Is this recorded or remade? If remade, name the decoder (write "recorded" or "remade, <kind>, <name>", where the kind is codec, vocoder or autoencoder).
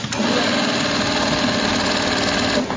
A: recorded